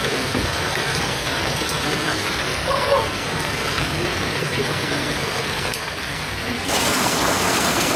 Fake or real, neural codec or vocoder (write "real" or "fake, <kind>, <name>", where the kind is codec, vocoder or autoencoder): fake, codec, SNAC